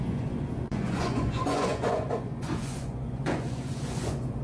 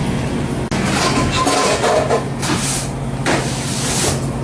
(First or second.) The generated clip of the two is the first